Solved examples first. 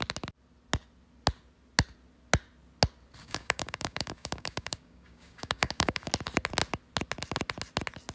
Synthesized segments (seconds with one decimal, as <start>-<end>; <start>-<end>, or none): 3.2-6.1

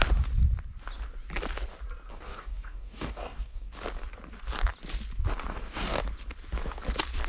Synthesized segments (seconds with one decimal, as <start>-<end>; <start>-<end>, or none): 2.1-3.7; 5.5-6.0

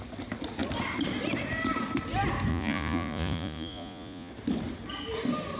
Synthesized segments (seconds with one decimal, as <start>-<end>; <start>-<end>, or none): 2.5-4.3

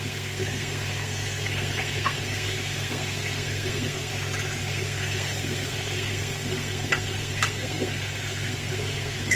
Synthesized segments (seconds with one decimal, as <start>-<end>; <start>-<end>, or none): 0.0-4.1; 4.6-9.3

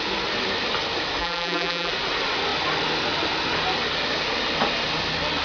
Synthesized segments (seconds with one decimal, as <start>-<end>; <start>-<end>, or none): 1.2-1.9

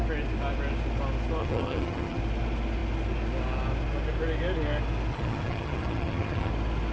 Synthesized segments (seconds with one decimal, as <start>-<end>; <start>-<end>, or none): 1.4-2.2; 5.1-6.5